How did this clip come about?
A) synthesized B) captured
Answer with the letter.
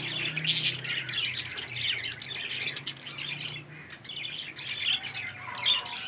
B